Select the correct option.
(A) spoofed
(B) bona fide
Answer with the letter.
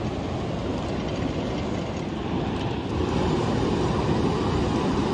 B